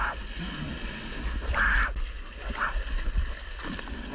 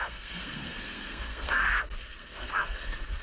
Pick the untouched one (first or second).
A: first